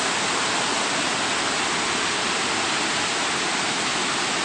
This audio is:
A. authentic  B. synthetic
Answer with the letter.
A